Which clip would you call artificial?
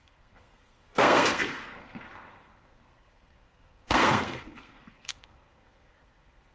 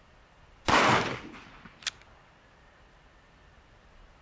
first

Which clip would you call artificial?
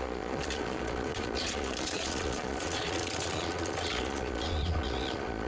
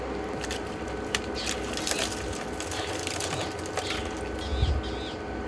first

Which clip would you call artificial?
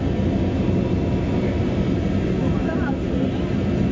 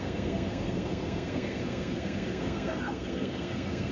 second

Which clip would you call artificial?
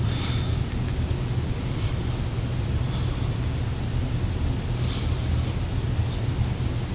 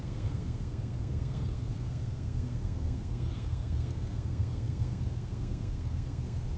second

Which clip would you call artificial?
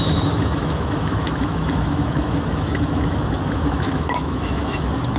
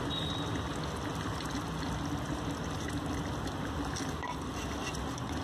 first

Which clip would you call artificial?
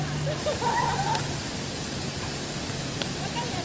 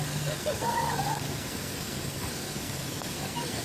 second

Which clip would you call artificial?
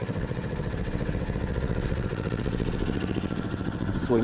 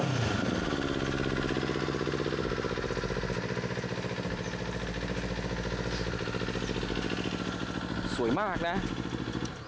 first